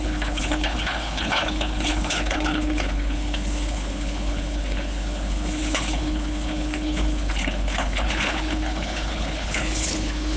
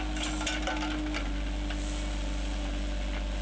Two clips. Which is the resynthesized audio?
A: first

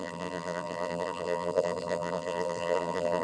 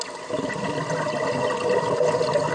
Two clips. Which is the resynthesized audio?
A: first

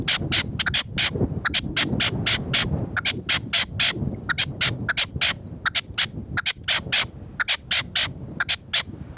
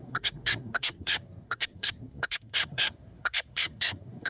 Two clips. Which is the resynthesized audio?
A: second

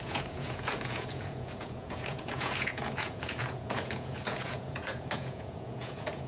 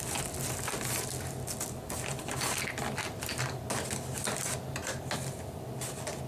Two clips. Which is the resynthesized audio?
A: first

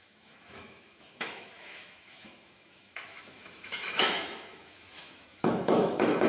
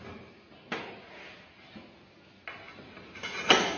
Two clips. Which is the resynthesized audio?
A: first